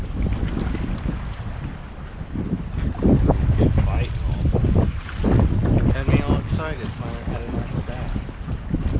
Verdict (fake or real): real